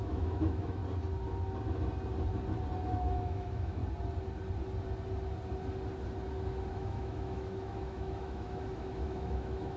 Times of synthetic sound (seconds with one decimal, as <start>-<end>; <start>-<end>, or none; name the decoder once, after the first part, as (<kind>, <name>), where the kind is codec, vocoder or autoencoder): 0.0-0.8 (autoencoder, DAC-VAE); 2.9-3.8; 6.7-9.8